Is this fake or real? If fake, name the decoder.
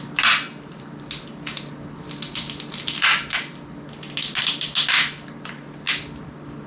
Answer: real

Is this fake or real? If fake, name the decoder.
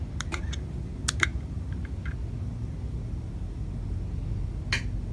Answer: real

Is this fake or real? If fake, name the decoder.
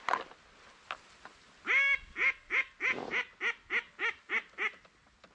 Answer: real